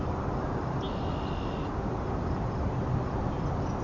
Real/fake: real